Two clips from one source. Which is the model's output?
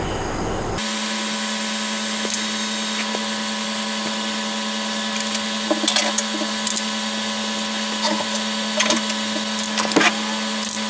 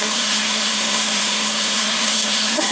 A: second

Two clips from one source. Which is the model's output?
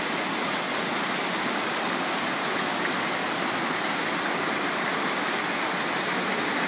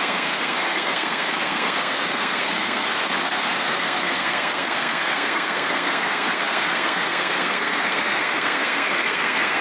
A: second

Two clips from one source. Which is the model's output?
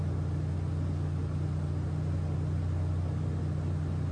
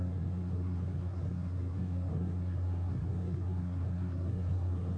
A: second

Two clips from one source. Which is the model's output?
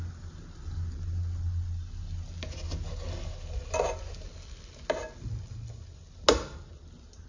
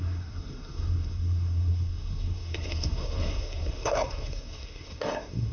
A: second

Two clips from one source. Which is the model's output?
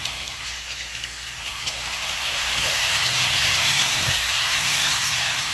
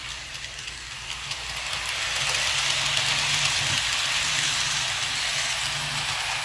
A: first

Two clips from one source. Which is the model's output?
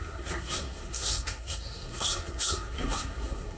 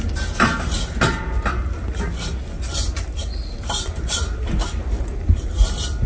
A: first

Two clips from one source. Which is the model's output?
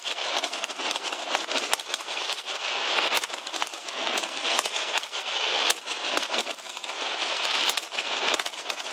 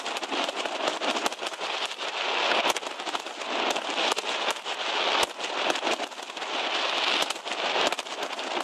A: first